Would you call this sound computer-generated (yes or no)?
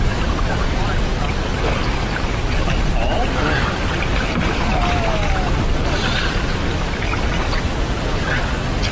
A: no